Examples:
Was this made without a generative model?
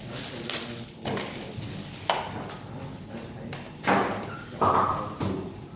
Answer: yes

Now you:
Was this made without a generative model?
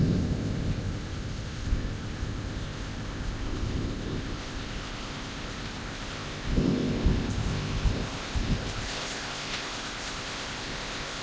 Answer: no